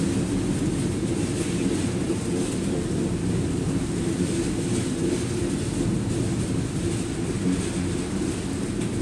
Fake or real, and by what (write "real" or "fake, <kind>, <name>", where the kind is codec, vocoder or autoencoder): real